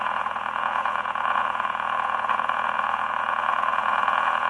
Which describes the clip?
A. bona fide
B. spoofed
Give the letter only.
B